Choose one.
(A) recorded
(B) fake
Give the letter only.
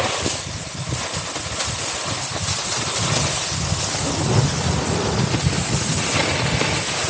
A